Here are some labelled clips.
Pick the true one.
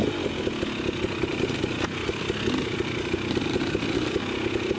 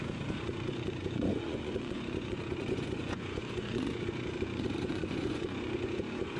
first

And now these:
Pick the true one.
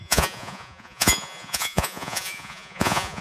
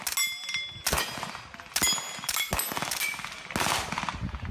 second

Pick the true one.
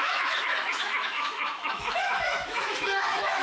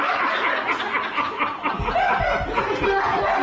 second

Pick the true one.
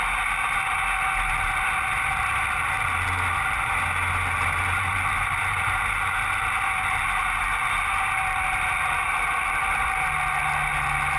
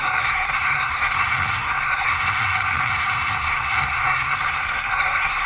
first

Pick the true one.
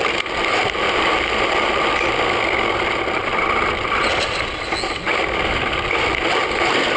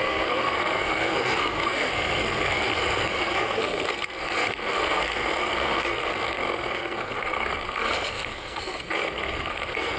first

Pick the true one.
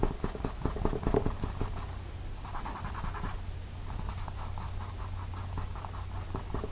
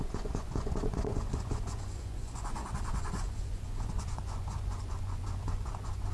first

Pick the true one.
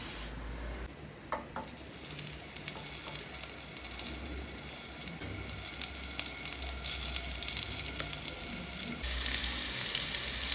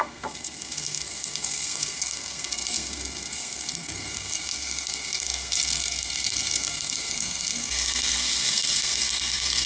first